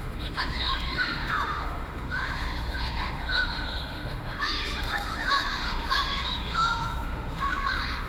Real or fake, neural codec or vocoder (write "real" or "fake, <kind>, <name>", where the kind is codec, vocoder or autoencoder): fake, autoencoder, DAC-VAE